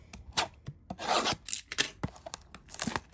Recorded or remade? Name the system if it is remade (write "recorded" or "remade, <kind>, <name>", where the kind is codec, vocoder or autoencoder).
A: recorded